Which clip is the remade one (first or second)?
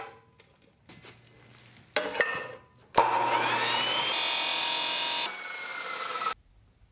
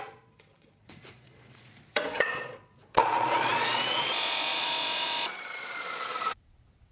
second